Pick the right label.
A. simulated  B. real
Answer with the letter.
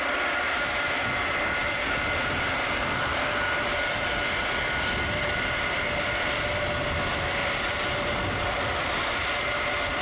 B